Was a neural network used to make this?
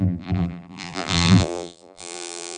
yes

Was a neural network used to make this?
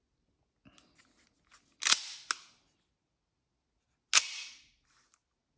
no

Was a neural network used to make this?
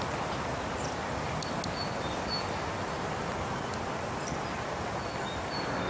no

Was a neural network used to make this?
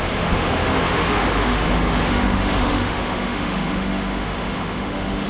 yes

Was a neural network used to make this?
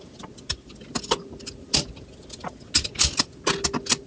no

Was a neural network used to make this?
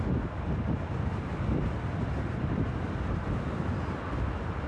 no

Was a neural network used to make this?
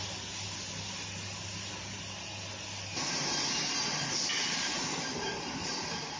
no